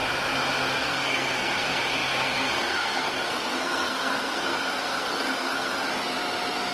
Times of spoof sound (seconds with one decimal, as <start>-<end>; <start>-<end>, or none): 0.6-5.7